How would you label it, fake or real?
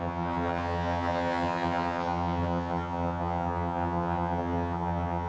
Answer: fake